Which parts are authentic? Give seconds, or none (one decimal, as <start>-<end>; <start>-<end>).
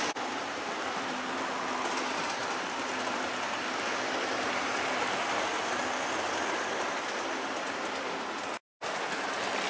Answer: 0.0-9.7